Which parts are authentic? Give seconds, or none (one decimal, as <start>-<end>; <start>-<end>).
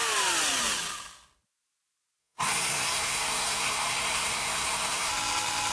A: 0.0-2.2; 5.1-5.7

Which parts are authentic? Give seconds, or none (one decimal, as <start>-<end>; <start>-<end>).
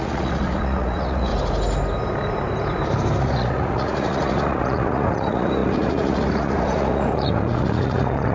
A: 1.3-3.2